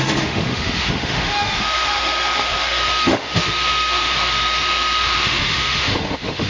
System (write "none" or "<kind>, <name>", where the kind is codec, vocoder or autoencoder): autoencoder, DAC-VAE